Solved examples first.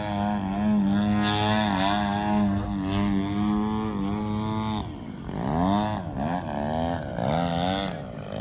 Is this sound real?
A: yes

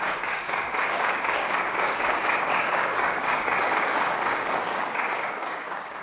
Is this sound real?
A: no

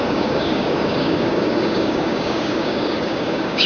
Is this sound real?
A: no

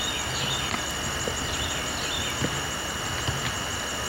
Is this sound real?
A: yes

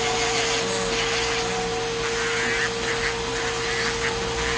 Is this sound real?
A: yes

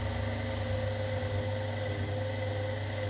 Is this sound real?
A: yes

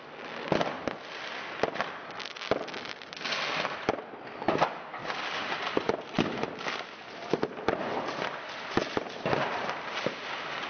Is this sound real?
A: yes